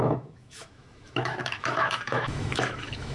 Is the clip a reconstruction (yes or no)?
yes